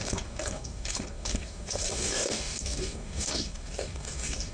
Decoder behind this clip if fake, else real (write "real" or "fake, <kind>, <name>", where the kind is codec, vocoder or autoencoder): fake, codec, DAC